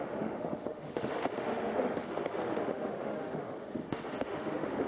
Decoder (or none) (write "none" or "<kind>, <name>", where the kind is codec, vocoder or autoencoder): autoencoder, DAC-VAE